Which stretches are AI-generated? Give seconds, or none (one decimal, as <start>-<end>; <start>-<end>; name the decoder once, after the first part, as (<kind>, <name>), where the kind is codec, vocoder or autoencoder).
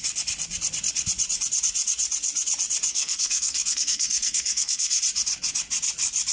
2.9-5.0 (codec, SNAC)